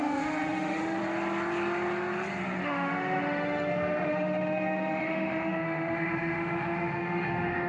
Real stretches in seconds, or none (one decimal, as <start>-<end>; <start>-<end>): 1.0-2.6